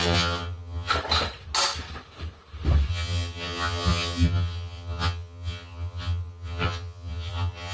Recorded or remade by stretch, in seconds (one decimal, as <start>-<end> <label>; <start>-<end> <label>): 0.0-0.9 remade; 0.9-2.9 recorded; 2.9-7.7 remade